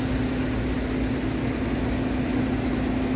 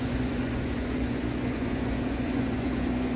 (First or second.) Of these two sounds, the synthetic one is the second